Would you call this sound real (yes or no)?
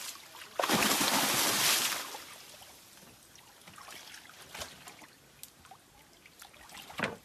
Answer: yes